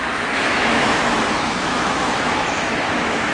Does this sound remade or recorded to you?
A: remade